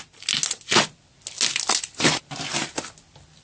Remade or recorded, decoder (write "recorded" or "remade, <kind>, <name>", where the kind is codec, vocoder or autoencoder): recorded